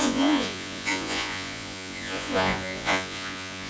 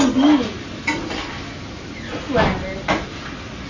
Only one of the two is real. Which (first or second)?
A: second